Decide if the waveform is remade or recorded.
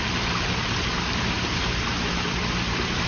recorded